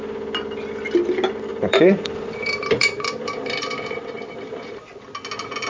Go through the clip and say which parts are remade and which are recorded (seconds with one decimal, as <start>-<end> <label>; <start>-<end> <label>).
0.0-1.5 recorded; 1.5-4.9 remade; 4.9-5.7 recorded